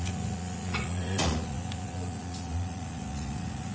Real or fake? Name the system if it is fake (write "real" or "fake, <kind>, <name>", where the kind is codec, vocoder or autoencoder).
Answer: fake, vocoder, Vocos